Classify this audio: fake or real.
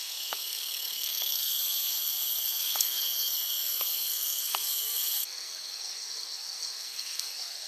fake